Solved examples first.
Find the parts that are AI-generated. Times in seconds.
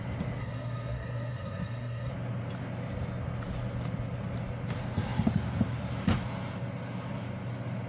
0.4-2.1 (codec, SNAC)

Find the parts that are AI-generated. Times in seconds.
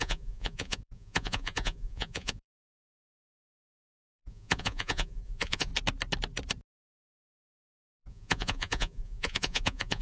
0.0-5.7 (vocoder, Vocos); 7.2-10.0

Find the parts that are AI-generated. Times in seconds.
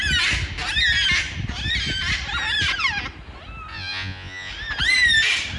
3.7-4.5 (vocoder, Vocos)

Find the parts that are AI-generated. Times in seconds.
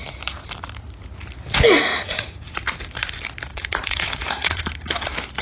1.9-2.5 (vocoder, Vocos); 3.5-4.6